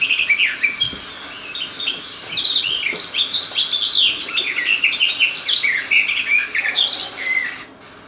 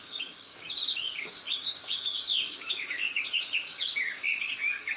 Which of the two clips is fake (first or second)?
second